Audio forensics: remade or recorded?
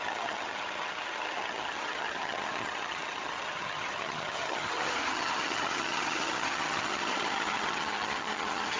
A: remade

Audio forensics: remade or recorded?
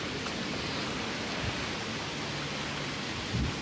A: recorded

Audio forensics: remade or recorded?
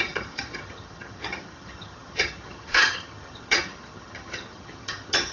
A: remade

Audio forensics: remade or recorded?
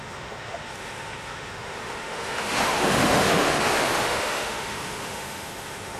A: remade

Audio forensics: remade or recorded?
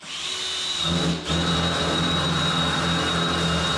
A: recorded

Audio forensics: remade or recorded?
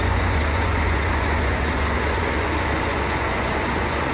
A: remade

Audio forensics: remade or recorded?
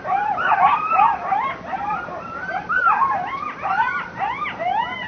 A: recorded